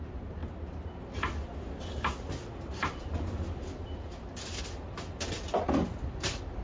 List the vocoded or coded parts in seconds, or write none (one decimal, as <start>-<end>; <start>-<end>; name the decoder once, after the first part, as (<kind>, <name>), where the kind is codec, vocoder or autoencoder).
none